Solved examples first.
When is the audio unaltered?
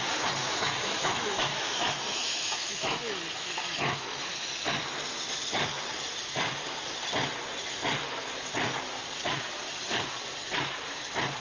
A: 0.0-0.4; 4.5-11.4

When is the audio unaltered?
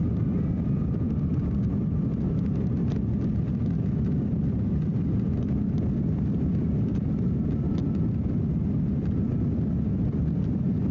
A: 0.0-10.9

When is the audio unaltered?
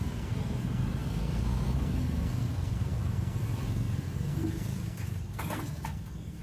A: none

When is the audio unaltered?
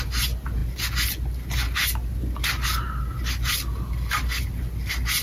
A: 0.0-5.2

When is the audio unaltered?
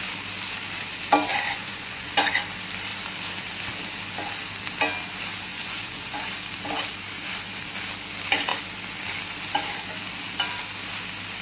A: 0.0-1.3; 2.1-5.5; 6.3-11.4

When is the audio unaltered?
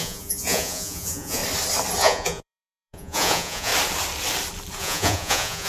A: 1.4-2.0; 3.7-4.8